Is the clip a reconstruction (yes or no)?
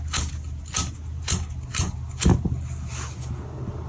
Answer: no